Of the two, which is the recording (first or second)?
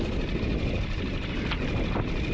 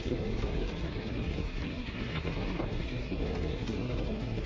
first